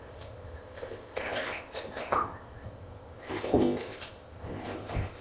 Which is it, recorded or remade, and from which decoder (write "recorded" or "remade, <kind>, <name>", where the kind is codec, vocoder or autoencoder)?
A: remade, codec, ZipCodec